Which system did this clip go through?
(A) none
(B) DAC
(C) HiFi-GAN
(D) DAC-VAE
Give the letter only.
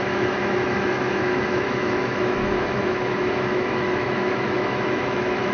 D